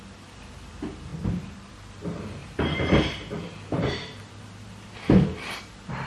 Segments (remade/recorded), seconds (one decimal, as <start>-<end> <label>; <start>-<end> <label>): 0.0-1.1 remade; 1.1-1.9 recorded; 1.9-6.1 remade